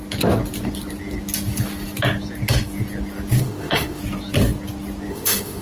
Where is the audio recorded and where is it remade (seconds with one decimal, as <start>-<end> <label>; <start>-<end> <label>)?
0.0-3.4 recorded; 3.4-4.0 remade; 4.0-5.1 recorded; 5.1-5.6 remade